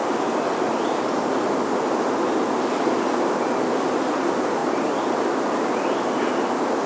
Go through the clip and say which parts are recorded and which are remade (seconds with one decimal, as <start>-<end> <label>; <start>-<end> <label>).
0.0-6.9 recorded